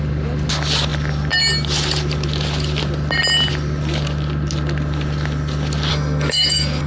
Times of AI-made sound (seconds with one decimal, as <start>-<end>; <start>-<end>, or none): 5.9-6.9